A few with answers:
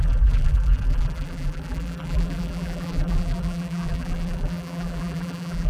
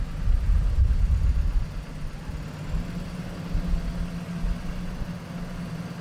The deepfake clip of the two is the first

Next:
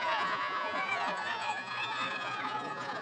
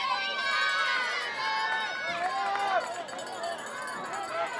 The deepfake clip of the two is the first